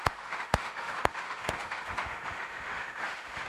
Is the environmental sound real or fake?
fake